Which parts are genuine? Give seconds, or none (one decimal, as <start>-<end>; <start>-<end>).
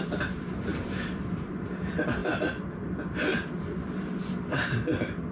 0.0-0.7; 1.7-5.3